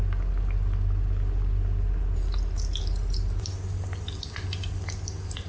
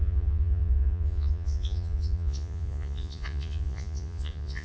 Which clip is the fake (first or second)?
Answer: second